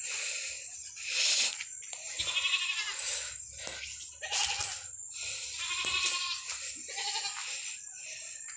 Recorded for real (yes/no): yes